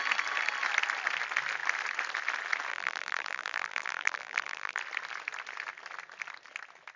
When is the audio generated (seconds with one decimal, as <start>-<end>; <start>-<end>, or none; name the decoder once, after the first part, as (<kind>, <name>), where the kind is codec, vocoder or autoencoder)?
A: 2.7-4.8 (vocoder, BigVGAN v2)

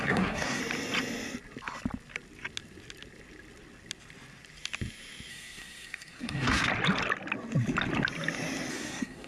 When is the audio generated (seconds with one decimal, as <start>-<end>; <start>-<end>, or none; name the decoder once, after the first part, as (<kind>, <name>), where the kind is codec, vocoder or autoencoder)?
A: 0.0-0.6 (codec, SNAC); 5.3-6.7; 8.7-9.3